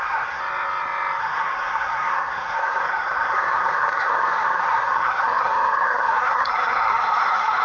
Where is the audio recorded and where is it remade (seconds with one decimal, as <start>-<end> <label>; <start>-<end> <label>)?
0.0-0.4 remade; 0.4-1.2 recorded; 1.2-7.6 remade